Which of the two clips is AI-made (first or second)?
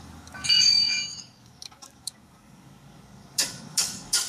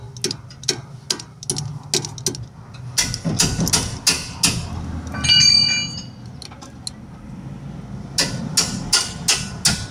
first